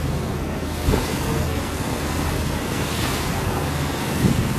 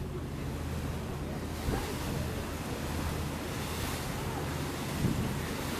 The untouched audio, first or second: second